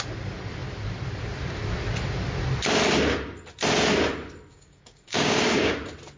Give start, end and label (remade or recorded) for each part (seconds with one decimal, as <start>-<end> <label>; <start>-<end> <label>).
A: 0.0-4.5 recorded; 4.5-5.7 remade; 5.7-6.2 recorded